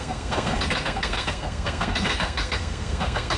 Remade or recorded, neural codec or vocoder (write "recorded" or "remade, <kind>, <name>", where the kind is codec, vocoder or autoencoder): remade, codec, SNAC